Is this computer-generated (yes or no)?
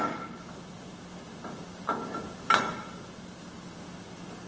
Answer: no